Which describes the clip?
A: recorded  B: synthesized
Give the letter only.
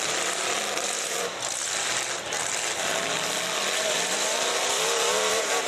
B